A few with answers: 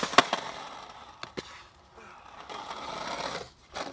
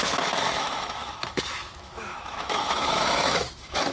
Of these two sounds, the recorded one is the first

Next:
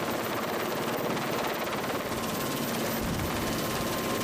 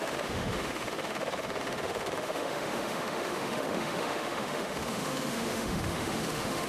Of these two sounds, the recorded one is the first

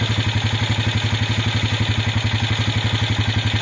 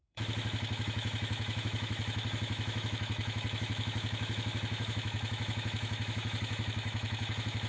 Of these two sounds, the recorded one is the first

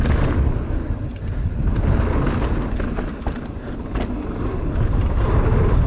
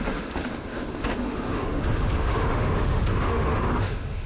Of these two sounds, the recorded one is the first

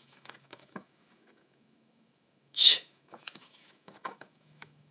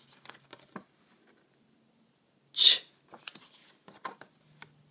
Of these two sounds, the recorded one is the second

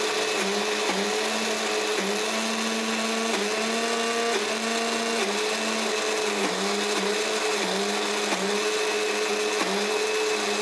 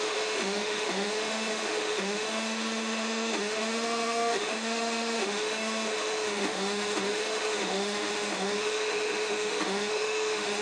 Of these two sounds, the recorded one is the first